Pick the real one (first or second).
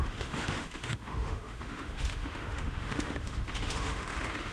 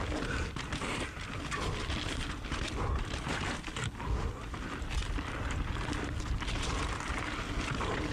second